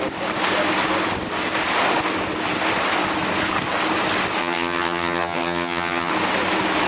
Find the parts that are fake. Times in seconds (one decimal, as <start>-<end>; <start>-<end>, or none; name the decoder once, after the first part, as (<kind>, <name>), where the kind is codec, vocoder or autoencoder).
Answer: 4.4-6.1 (vocoder, HiFi-GAN)